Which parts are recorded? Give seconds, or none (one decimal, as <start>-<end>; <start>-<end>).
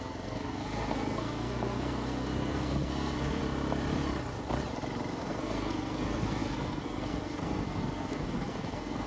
3.4-5.1